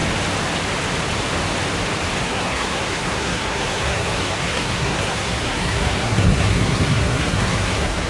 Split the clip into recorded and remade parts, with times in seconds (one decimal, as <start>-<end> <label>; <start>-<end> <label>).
0.0-2.2 recorded; 2.2-8.1 remade